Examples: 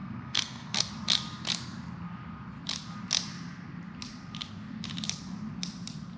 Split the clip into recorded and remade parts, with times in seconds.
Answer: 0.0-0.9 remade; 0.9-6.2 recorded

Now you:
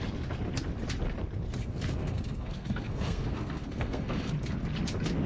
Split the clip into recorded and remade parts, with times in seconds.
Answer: 0.0-1.6 recorded; 1.6-4.3 remade; 4.3-5.3 recorded

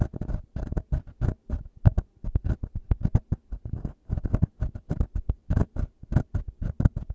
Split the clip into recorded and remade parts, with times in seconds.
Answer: 0.0-6.1 recorded; 6.1-7.1 remade

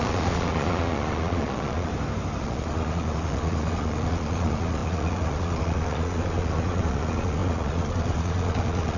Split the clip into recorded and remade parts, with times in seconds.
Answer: 0.0-1.9 remade; 1.9-2.4 recorded; 2.4-9.0 remade

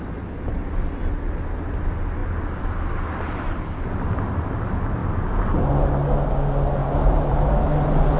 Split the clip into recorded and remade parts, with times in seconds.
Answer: 0.0-6.8 recorded; 6.8-7.5 remade; 7.5-8.2 recorded

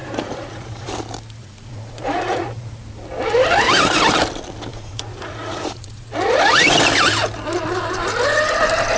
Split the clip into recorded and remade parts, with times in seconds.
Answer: 0.0-0.9 remade; 0.9-1.4 recorded; 1.4-2.8 remade; 2.8-4.7 recorded; 4.7-6.1 remade; 6.1-9.0 recorded

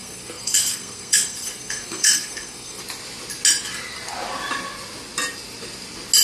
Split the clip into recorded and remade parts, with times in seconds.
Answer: 0.0-2.8 remade; 2.8-6.2 recorded

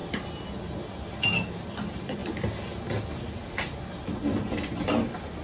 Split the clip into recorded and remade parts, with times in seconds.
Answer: 0.0-5.4 recorded